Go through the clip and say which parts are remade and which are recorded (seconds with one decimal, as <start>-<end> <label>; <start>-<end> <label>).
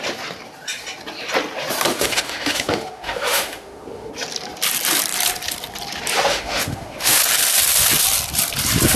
0.0-1.9 recorded; 1.9-4.1 remade; 4.1-6.3 recorded; 6.3-7.2 remade; 7.2-9.0 recorded